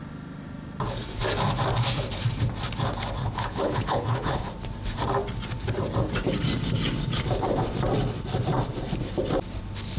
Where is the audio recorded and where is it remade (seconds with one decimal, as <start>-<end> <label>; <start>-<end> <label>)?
0.0-3.2 recorded; 3.2-4.5 remade; 4.5-10.0 recorded